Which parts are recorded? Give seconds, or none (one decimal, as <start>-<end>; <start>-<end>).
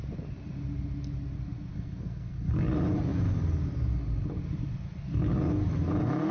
0.0-1.7; 2.5-6.3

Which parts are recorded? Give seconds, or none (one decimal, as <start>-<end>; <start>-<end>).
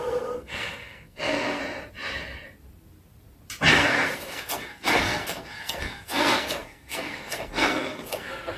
1.6-3.7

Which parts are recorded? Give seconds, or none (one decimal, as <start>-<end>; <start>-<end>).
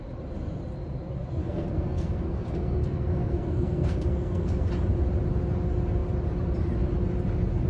0.0-1.4; 4.7-7.7